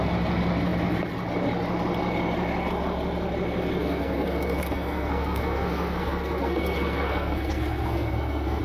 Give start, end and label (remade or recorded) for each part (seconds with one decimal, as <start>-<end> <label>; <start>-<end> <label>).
0.0-3.8 recorded; 3.8-8.6 remade